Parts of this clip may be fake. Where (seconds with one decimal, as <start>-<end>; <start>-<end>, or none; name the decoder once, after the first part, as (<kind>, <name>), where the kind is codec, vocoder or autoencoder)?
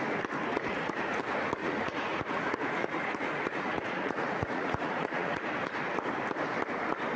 0.5-1.2 (vocoder, Vocos); 1.6-5.5